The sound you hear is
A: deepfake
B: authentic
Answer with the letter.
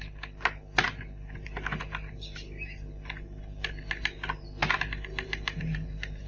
B